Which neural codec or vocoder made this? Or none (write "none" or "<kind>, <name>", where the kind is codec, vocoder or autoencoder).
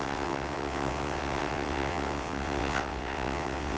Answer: vocoder, WaveNeXt